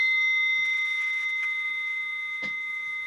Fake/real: real